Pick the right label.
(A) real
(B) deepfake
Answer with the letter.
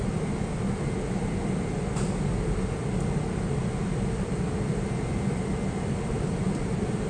A